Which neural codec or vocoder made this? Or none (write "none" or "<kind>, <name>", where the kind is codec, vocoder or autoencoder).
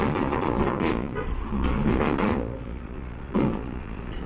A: vocoder, Vocos